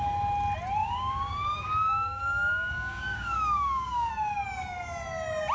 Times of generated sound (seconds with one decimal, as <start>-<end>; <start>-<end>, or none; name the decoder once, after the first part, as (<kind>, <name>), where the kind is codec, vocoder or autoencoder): 0.8-4.1 (codec, DAC)